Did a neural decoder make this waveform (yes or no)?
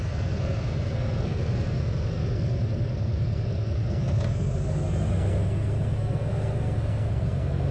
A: yes